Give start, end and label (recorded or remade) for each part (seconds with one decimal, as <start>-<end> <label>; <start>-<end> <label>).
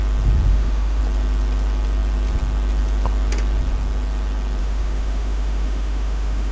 0.0-0.5 recorded; 0.5-1.0 remade; 1.0-4.6 recorded; 4.6-6.5 remade